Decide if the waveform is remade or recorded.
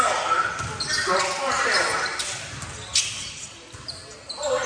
recorded